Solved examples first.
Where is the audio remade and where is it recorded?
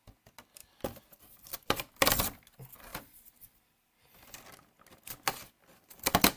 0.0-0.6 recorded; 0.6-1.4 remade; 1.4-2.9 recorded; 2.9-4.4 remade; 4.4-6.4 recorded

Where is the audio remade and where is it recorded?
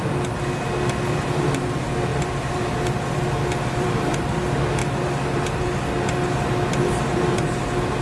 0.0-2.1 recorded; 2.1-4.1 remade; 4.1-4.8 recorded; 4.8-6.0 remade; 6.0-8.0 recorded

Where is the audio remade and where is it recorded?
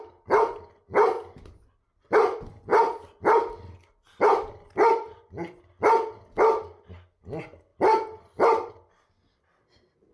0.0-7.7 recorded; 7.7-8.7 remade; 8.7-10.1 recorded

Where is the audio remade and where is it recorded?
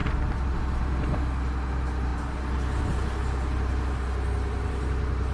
0.0-0.6 remade; 0.6-5.3 recorded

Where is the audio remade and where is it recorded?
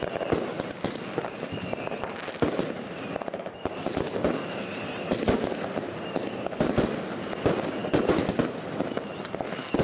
0.0-7.8 recorded; 7.8-8.8 remade; 8.8-9.8 recorded